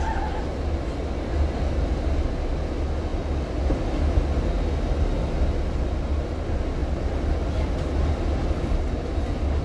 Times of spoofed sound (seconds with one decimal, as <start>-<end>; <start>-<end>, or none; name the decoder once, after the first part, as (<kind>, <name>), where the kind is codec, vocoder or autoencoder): none